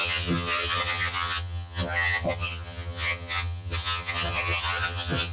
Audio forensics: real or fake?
fake